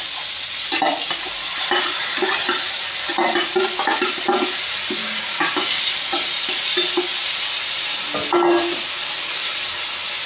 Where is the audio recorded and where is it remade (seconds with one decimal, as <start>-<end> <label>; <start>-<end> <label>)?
0.0-5.0 recorded; 5.0-5.8 remade; 5.8-10.3 recorded